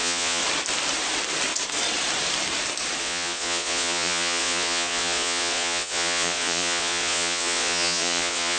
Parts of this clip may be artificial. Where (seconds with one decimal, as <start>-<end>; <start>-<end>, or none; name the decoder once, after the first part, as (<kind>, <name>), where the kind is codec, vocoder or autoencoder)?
0.0-0.4 (vocoder, Vocos); 3.0-8.6